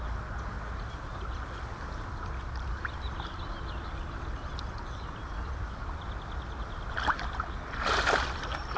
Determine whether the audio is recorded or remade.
recorded